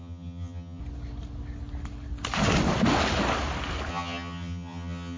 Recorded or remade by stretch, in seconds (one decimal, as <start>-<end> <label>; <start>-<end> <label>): 0.0-0.8 remade; 0.8-3.9 recorded; 3.9-5.2 remade